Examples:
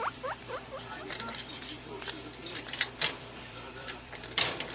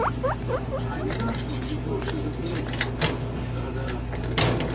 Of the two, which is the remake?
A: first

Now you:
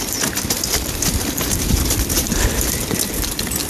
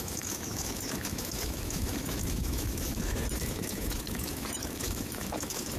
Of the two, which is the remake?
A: second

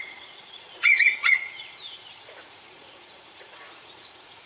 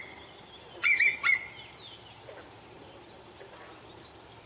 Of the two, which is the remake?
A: first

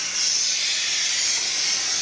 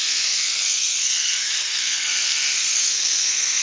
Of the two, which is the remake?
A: second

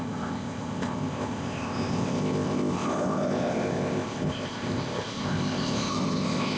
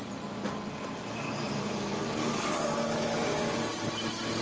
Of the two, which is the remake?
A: first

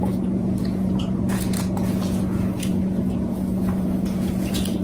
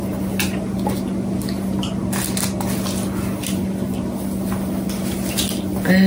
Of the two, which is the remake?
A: first